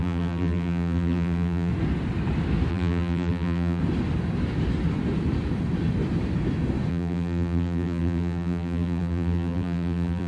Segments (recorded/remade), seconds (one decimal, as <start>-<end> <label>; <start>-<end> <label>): 0.0-1.7 remade; 1.7-2.7 recorded; 2.7-3.8 remade; 3.8-6.9 recorded; 6.9-10.3 remade